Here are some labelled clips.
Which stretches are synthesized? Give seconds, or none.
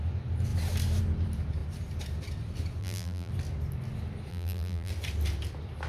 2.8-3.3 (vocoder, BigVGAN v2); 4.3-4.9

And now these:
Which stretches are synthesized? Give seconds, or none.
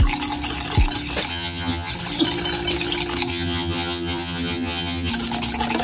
1.3-1.9 (vocoder, HiFi-GAN); 3.3-5.1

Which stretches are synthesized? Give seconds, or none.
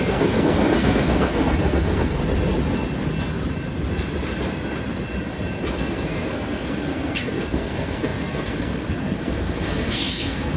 0.0-2.2 (codec, SNAC); 5.7-10.6